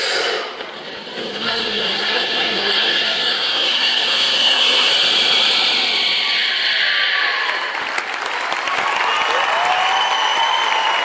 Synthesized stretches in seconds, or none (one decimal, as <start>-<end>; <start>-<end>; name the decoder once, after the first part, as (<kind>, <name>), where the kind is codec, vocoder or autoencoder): 1.3-4.9 (codec, SNAC)